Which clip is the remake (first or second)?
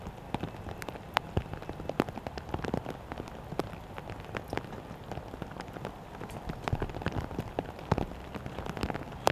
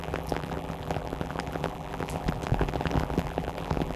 second